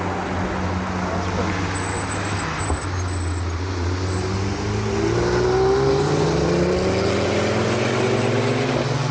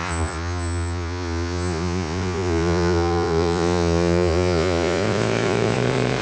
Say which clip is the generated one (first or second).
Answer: second